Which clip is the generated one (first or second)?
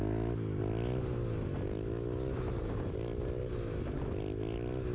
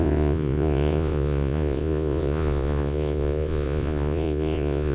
second